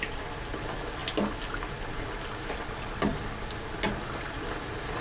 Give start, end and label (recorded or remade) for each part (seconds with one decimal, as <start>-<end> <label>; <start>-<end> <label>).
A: 0.0-5.0 recorded